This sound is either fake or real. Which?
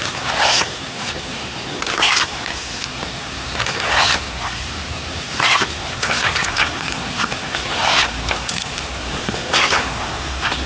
fake